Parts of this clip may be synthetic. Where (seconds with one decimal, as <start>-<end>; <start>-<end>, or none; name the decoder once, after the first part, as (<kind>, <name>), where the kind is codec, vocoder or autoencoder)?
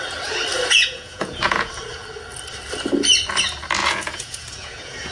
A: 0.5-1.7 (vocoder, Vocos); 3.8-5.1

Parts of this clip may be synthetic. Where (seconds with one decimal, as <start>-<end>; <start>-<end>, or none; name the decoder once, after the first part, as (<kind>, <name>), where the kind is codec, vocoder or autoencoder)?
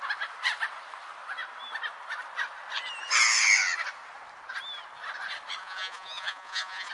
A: 5.6-6.9 (vocoder, Vocos)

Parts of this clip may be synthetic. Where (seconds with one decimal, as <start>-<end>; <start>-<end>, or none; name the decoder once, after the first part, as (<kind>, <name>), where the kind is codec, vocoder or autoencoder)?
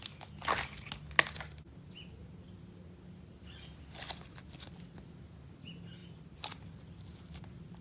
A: none